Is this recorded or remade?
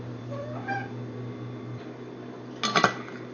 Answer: recorded